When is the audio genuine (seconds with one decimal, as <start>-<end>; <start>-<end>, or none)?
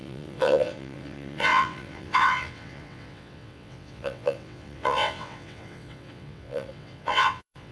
none